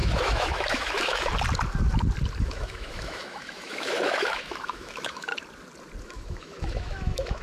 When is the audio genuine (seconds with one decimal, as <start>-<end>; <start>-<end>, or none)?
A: 1.3-2.4; 5.3-6.0